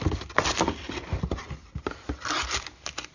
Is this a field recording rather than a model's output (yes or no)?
yes